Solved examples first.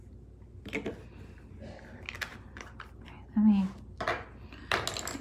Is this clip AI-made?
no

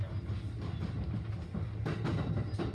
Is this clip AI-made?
no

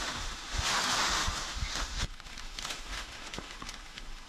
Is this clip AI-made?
yes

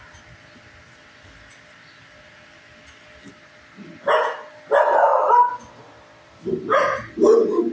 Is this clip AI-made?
no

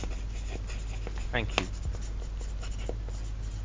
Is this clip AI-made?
no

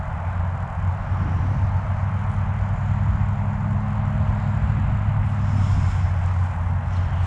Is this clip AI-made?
no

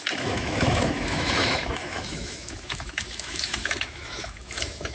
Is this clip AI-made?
yes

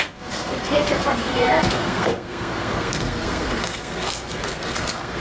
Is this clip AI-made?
yes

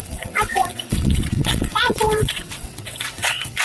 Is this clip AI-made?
yes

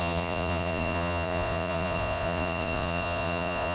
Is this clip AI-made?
yes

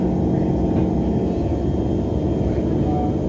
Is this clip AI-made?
no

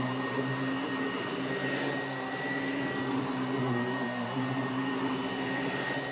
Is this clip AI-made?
no